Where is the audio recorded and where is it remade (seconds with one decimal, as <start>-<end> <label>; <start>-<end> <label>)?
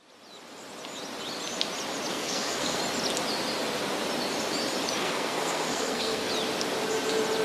0.0-2.1 recorded; 2.1-2.8 remade; 2.8-5.0 recorded; 5.0-6.3 remade; 6.3-7.4 recorded